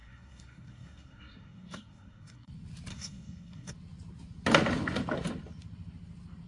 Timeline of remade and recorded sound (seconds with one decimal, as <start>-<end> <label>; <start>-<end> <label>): 0.0-2.5 remade; 2.5-2.9 recorded; 2.9-3.7 remade; 3.7-6.5 recorded